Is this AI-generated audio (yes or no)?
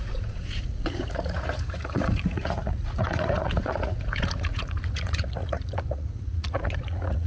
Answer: yes